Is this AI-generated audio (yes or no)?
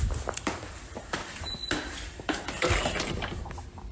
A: yes